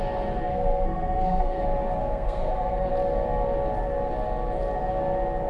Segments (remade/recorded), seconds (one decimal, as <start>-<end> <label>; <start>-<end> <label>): 0.0-0.5 recorded; 0.5-1.6 remade; 1.6-2.0 recorded; 2.0-2.9 remade; 2.9-5.5 recorded